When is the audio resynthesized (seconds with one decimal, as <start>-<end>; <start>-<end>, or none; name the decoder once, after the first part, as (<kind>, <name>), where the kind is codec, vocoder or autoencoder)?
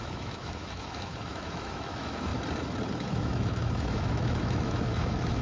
0.0-2.3 (autoencoder, DAC-VAE); 2.9-5.4